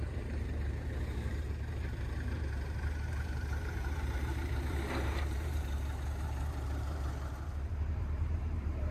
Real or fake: fake